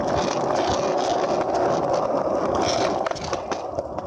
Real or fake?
real